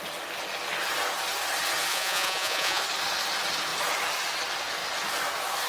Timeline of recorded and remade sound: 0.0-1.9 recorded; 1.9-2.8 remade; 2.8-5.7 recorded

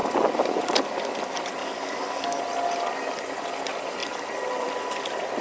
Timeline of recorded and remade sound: 0.0-1.6 recorded; 1.6-2.4 remade; 2.4-5.4 recorded